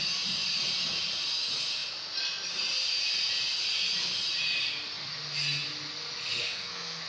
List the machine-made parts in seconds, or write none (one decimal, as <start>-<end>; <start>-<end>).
6.3-7.1